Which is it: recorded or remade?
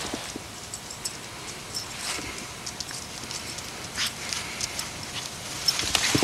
recorded